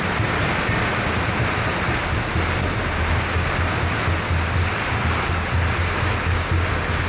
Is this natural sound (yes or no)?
yes